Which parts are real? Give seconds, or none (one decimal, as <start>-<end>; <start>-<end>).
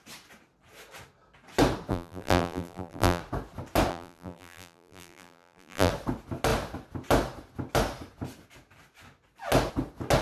0.0-1.9; 3.2-3.9; 5.9-10.2